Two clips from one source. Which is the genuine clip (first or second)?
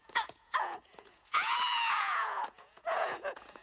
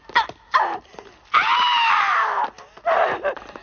second